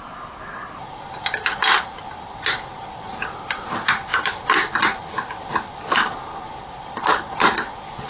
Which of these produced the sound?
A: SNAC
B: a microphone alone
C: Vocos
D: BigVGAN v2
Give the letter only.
B